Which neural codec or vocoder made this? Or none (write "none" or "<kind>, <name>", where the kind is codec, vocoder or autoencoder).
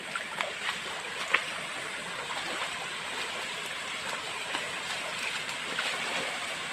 none